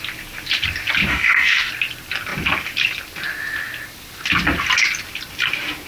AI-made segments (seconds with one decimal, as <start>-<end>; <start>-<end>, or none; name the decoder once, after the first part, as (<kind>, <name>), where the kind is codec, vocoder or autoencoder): 1.1-1.7 (codec, DAC)